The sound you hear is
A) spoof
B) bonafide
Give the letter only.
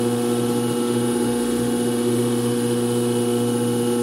A